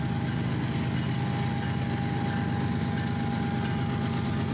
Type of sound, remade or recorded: recorded